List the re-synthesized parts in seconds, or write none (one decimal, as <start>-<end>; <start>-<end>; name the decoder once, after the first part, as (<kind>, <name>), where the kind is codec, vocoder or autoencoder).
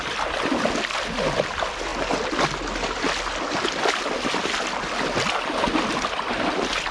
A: none